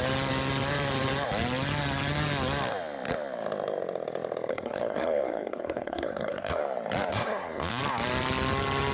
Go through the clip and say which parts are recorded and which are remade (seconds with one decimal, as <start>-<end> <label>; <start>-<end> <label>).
0.0-4.5 recorded; 4.5-6.6 remade; 6.6-7.1 recorded; 7.1-7.8 remade; 7.8-8.9 recorded